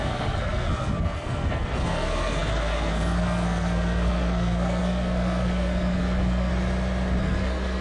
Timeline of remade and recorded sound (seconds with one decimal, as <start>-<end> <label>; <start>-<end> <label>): 0.0-6.5 remade; 6.5-7.2 recorded; 7.2-7.8 remade